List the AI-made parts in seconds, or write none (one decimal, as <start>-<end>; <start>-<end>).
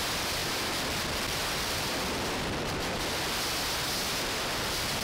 0.4-3.4